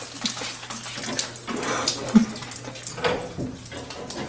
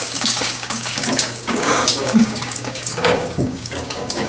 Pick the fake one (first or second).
second